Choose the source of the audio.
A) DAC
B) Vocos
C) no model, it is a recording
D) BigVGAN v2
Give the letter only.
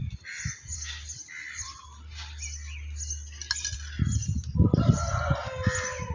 C